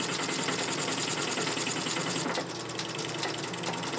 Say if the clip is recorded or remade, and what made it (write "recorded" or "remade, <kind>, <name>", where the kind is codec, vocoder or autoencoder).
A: recorded